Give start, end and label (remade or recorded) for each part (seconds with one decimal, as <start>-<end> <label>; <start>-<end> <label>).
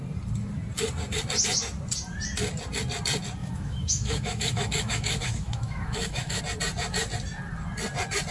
0.0-3.4 recorded; 3.4-6.4 remade; 6.4-8.3 recorded